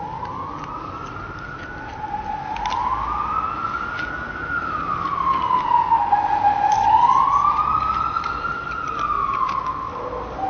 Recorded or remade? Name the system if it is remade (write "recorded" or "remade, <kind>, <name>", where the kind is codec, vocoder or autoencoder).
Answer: recorded